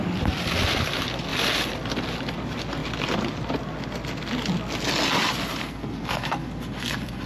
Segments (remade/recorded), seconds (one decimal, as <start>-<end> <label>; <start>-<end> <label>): 0.0-5.6 recorded; 5.6-7.3 remade